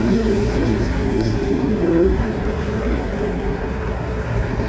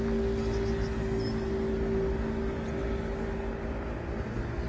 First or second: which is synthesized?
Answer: first